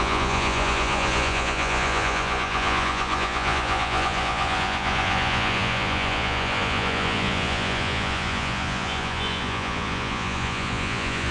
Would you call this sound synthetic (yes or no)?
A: yes